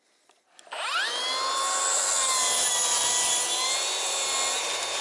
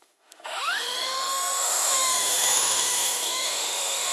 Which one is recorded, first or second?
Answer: first